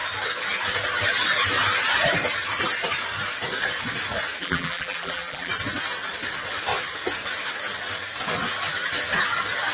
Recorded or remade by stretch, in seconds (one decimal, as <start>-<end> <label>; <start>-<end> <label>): 0.0-4.4 recorded; 4.4-5.5 remade; 5.5-9.7 recorded